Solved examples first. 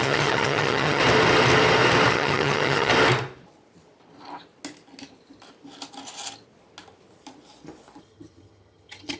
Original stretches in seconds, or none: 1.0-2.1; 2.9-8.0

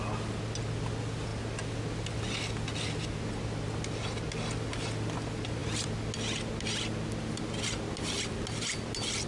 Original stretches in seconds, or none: 0.0-9.3

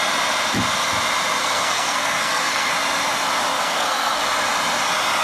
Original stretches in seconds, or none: 0.0-1.4; 2.7-3.5; 4.2-5.2

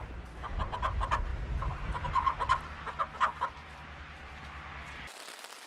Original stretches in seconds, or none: 0.0-5.7